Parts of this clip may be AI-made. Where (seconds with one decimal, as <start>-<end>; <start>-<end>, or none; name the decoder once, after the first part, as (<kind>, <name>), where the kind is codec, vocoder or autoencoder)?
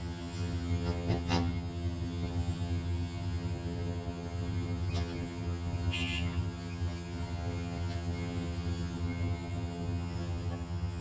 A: 0.0-11.0 (vocoder, HiFi-GAN)